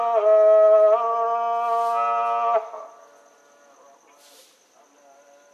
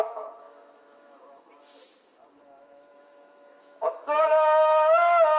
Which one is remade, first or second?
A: second